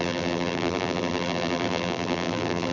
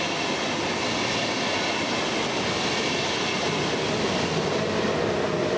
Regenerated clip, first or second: first